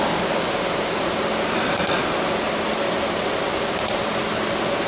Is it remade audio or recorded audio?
recorded